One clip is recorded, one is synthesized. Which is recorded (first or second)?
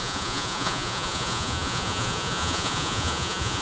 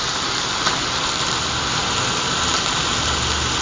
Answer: second